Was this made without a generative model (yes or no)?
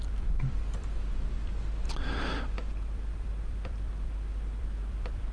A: no